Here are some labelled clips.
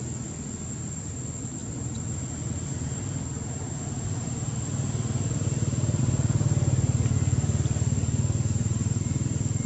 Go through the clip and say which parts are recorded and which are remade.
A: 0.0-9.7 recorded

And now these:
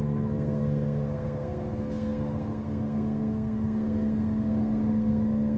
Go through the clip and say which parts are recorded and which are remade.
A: 0.0-5.6 remade